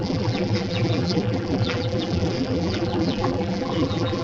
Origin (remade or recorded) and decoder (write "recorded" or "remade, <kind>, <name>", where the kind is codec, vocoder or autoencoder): remade, vocoder, BigVGAN v2